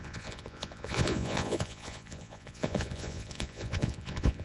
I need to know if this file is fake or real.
fake